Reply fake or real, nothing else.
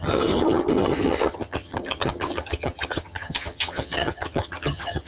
fake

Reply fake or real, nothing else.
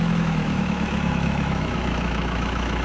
fake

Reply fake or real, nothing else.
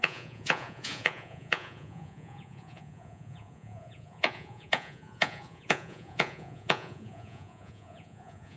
fake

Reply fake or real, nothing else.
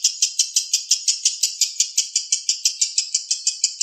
real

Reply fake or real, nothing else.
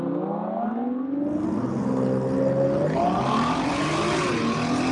real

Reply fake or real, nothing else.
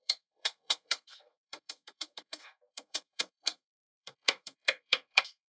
fake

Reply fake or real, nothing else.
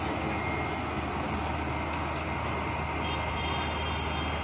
real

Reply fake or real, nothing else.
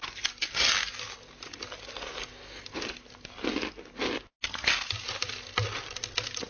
real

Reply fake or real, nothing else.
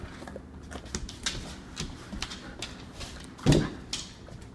real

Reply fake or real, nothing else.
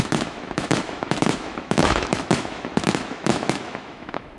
fake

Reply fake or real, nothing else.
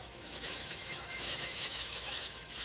fake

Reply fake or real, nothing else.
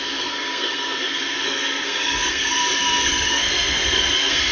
fake